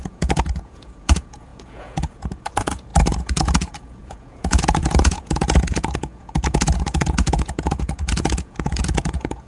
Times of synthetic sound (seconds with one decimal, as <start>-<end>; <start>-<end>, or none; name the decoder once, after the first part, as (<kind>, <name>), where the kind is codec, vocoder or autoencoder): 0.0-9.5 (vocoder, Vocos)